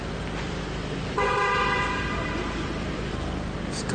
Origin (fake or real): real